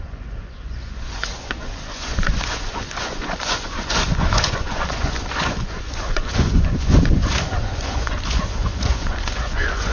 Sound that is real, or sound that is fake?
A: fake